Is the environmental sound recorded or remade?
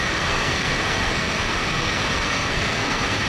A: remade